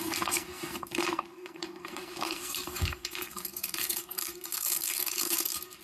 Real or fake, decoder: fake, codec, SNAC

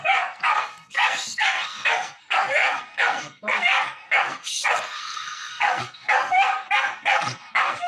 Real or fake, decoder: fake, codec, SNAC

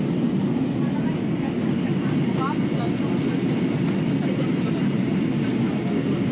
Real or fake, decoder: real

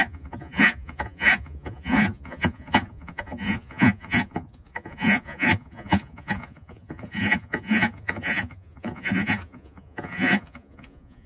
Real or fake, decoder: fake, vocoder, Vocos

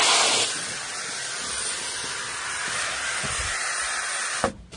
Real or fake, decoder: real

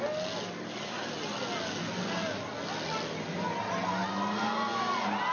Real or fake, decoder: real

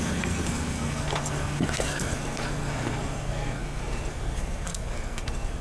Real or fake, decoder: fake, codec, SNAC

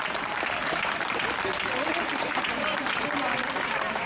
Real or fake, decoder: real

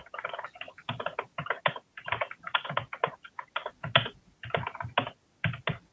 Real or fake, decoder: real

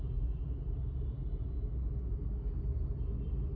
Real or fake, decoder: real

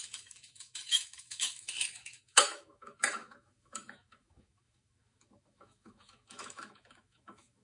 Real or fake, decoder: fake, autoencoder, DAC-VAE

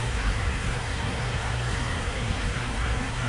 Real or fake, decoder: fake, codec, SNAC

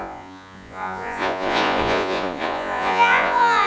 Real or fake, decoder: fake, vocoder, Vocos